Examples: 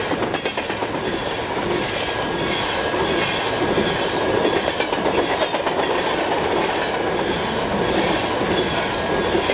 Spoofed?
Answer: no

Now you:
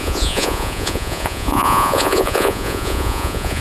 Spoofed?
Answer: yes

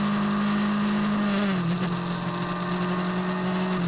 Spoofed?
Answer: no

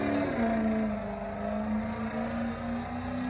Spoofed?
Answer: no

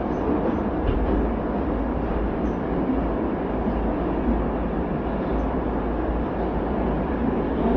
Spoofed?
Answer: no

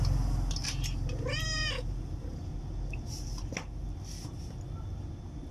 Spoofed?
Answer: no